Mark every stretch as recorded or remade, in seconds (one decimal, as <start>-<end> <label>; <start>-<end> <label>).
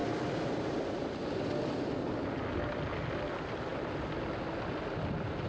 0.0-5.5 recorded